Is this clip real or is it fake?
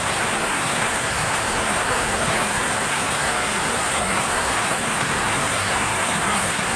fake